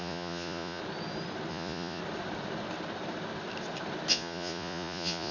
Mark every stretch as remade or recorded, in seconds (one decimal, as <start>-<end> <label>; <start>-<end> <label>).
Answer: 0.0-0.8 remade; 0.8-1.5 recorded; 1.5-2.0 remade; 2.0-4.1 recorded; 4.1-5.3 remade